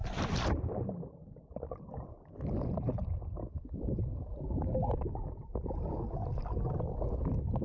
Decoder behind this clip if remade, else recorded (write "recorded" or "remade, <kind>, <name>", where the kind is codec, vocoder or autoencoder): recorded